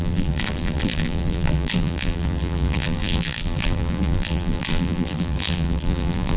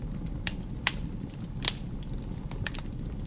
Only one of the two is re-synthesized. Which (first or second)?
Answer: first